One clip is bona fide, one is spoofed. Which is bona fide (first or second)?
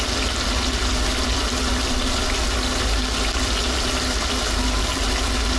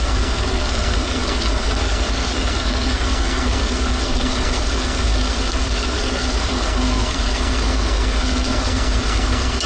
first